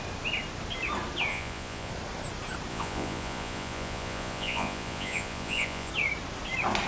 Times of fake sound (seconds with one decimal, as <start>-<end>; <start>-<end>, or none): 1.3-1.9; 2.7-5.9